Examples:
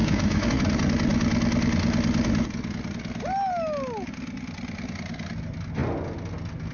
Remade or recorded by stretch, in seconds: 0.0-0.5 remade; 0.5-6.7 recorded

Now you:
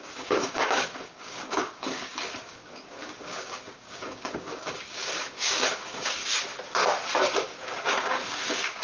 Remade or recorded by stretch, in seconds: 0.0-6.2 remade; 6.2-7.2 recorded; 7.2-8.8 remade

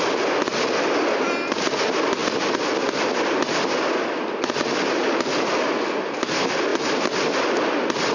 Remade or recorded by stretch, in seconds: 0.0-8.1 recorded

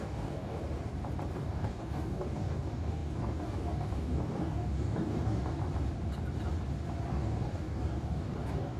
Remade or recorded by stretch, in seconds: 0.0-0.6 remade; 0.6-1.3 recorded; 1.3-5.6 remade; 5.6-7.1 recorded; 7.1-8.8 remade

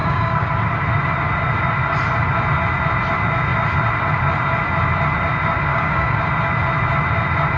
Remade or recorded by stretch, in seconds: 0.0-0.5 remade; 0.5-5.7 recorded; 5.7-6.2 remade; 6.2-7.6 recorded

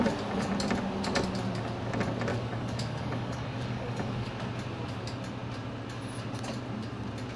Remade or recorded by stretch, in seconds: 0.0-2.3 recorded; 2.3-4.3 remade; 4.3-7.4 recorded